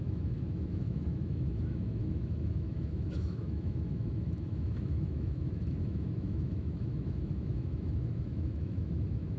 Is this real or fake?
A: fake